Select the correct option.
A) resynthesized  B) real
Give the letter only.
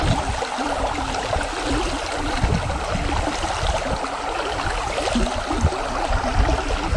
B